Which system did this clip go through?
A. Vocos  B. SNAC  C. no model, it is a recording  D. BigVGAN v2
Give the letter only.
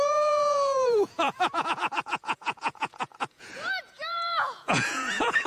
A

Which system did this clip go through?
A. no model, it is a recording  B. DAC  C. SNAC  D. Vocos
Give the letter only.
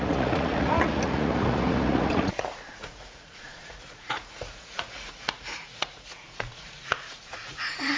D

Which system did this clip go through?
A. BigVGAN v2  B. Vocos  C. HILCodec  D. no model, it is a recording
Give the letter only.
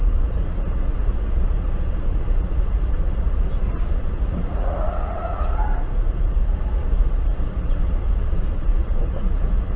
B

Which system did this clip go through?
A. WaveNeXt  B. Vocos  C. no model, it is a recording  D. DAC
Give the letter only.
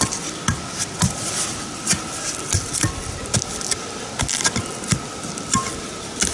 C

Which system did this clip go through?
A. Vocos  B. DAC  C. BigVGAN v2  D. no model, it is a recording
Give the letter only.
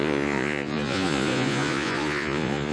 A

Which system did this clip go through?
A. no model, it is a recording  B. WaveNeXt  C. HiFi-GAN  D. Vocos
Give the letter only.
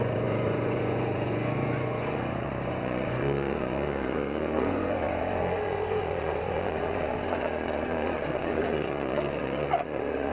D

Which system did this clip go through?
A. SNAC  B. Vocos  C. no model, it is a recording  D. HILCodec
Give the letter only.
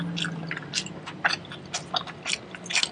C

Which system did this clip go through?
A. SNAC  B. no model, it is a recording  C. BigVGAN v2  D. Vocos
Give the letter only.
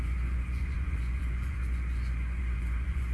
D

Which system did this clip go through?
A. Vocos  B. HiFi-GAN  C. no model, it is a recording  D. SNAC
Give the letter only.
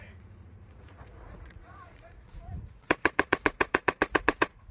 A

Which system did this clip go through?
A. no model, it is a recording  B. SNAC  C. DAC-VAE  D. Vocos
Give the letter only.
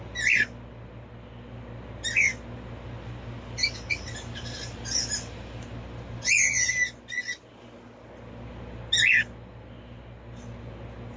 A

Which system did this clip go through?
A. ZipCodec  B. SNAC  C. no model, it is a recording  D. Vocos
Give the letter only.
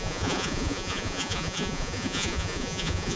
D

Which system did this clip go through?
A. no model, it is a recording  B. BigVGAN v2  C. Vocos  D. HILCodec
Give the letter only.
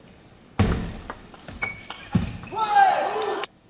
A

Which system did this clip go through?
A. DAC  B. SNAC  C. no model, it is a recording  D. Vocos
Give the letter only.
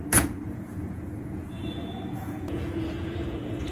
D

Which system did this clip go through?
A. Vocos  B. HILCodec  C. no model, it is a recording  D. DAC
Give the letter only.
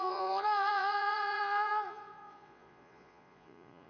A